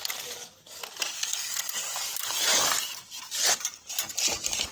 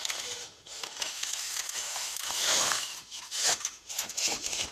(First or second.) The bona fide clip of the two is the first